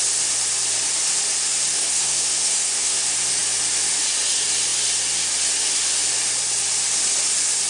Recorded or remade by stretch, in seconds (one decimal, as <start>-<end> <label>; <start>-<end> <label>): 0.0-1.7 recorded; 1.7-3.0 remade; 3.0-7.7 recorded